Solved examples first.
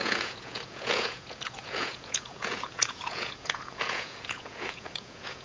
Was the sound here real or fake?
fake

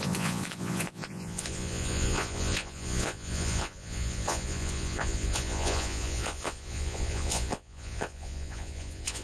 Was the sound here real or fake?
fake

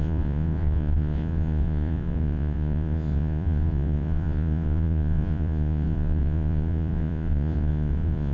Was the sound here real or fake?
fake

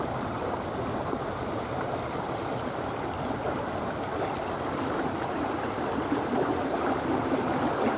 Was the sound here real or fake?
real